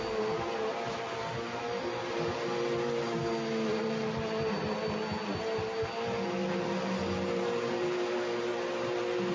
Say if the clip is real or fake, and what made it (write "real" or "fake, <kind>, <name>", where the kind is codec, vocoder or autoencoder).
real